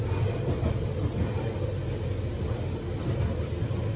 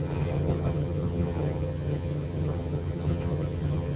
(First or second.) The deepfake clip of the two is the second